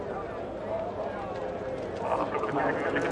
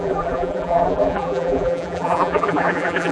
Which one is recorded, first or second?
first